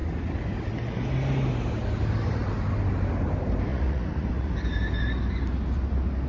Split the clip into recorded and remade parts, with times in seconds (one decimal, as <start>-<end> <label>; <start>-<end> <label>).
0.0-3.7 recorded; 3.7-4.5 remade; 4.5-6.3 recorded